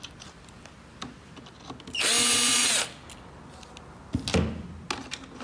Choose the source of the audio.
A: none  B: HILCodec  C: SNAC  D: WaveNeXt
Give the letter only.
A